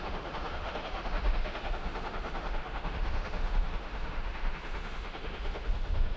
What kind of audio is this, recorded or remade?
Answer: remade